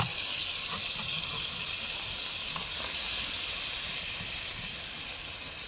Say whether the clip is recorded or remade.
recorded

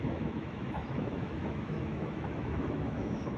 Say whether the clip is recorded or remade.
remade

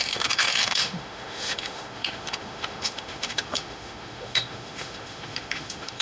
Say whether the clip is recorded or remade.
remade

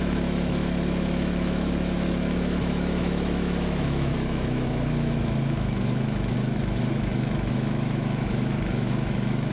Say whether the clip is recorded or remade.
remade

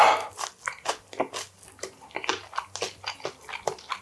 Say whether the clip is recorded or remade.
recorded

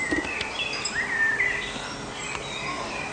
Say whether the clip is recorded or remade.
recorded